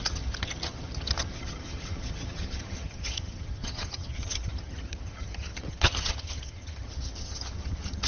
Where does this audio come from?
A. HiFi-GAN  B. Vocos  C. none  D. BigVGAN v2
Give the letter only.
A